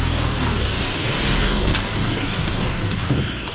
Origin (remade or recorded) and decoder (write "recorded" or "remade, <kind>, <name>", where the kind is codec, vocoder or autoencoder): remade, codec, DAC